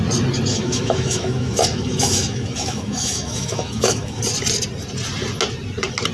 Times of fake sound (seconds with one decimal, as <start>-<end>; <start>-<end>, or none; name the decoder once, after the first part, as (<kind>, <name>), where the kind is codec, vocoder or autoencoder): 0.5-4.2 (autoencoder, DAC-VAE)